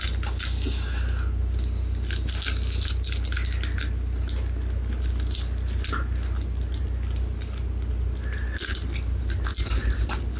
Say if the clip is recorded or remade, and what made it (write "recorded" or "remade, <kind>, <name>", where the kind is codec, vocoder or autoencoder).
recorded